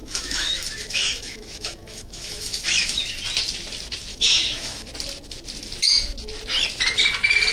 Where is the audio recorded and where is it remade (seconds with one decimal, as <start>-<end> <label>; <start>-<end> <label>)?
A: 0.0-3.0 remade; 3.0-4.1 recorded; 4.1-4.9 remade; 4.9-7.5 recorded